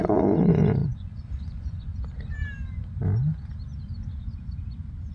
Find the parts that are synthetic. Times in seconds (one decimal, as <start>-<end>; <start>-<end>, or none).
0.0-1.9